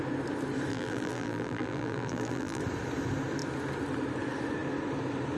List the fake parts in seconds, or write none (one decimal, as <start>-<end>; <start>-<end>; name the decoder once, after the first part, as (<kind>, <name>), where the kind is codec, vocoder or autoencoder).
0.7-2.6 (vocoder, BigVGAN v2)